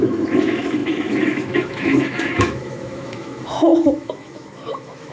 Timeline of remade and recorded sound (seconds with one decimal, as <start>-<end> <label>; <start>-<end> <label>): 0.0-5.1 remade